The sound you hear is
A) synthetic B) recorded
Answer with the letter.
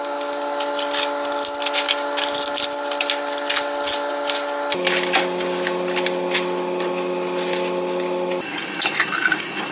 B